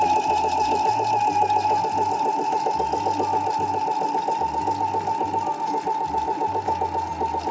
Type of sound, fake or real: real